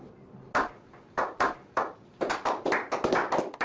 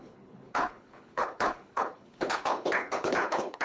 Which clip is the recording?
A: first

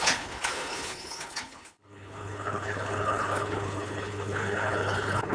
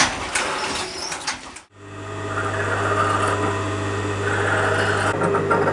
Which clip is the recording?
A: second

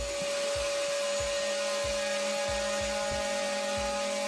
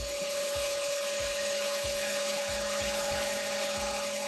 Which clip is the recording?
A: first